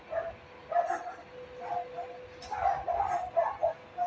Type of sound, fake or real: real